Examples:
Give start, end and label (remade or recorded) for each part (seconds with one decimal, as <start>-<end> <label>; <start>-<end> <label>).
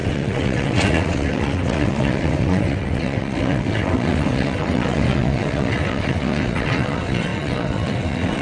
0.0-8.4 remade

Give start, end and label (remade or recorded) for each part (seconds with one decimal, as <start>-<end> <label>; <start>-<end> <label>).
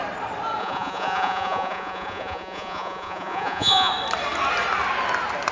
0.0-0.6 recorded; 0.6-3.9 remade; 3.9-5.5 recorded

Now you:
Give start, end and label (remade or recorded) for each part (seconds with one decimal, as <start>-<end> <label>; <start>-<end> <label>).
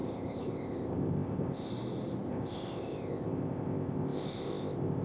0.0-1.7 remade; 1.7-2.3 recorded; 2.3-5.0 remade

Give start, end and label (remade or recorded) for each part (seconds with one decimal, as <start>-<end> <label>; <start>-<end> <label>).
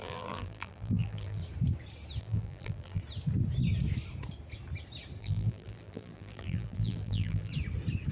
0.0-1.4 remade; 1.4-2.2 recorded; 2.2-3.0 remade; 3.0-5.2 recorded; 5.2-7.5 remade; 7.5-8.1 recorded